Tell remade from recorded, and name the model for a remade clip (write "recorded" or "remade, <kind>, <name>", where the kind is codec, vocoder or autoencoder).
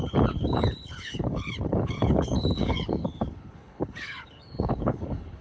remade, codec, HILCodec